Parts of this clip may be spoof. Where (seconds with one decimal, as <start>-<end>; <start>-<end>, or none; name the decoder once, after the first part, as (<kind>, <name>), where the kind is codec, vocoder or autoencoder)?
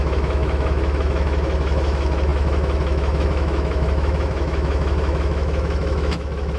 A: 0.0-6.6 (autoencoder, DAC-VAE)